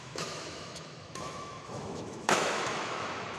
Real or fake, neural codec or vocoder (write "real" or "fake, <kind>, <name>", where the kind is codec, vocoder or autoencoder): fake, autoencoder, DAC-VAE